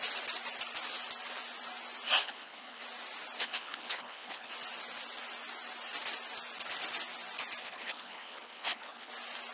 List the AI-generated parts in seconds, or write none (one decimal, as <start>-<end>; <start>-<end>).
2.2-2.8; 3.4-4.5; 7.6-9.1